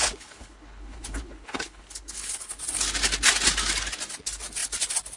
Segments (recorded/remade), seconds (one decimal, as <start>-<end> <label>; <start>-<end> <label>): 0.0-2.6 remade; 2.6-5.2 recorded